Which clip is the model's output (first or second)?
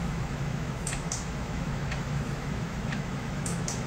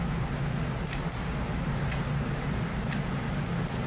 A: first